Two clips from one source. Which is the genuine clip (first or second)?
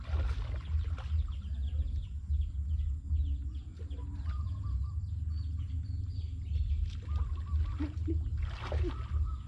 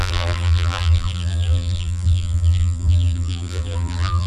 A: first